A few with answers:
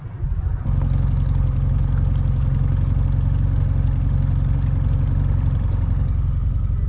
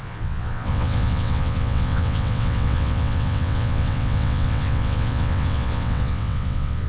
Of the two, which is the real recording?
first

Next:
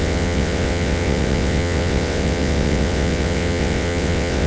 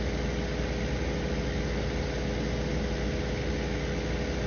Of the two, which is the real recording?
second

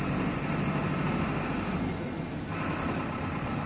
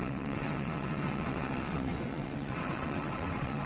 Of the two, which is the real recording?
first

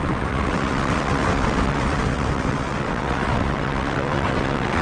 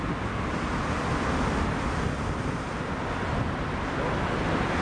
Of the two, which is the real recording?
second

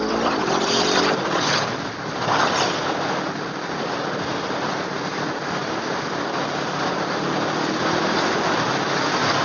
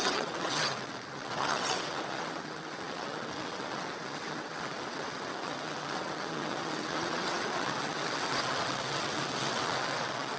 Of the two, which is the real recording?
first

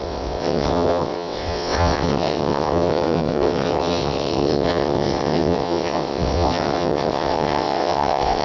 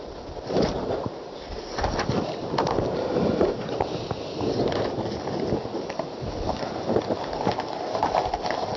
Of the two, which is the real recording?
second